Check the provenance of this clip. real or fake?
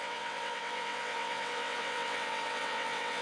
fake